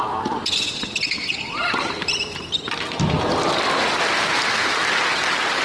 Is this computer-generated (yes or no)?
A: no